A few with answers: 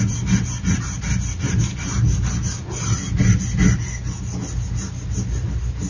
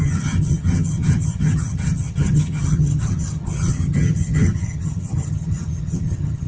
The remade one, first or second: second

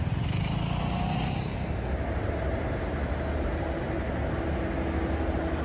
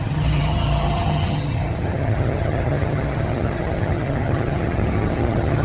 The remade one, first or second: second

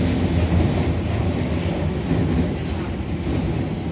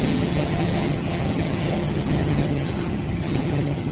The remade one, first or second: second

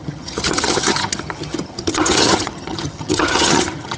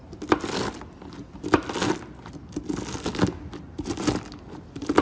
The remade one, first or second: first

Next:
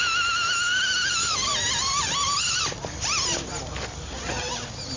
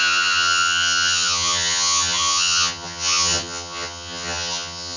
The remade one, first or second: second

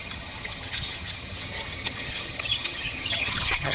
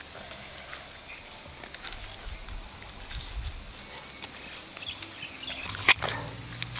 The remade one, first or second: first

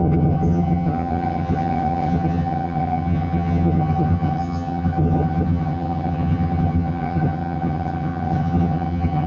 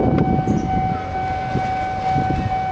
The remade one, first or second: first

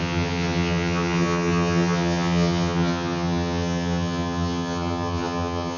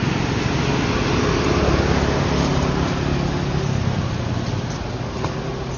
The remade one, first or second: first